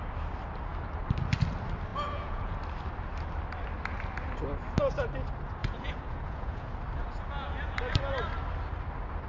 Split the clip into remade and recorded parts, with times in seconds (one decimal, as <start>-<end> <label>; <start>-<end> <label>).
0.0-1.9 recorded; 1.9-2.5 remade; 2.5-5.6 recorded; 5.6-6.7 remade; 6.7-9.3 recorded